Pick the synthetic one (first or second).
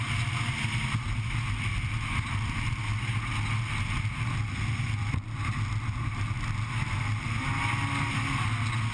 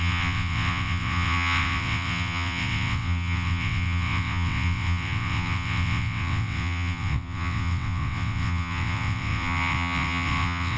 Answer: second